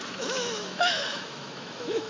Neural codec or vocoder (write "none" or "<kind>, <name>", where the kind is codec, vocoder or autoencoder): autoencoder, DAC-VAE